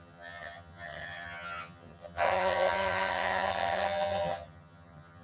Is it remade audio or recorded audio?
remade